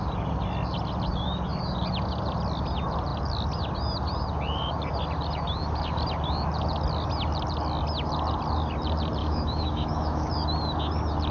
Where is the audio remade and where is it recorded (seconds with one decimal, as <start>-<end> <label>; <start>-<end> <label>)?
0.0-9.2 recorded; 9.2-10.3 remade; 10.3-11.3 recorded